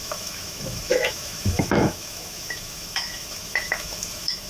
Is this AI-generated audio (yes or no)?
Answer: yes